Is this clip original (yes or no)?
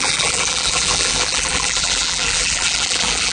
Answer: no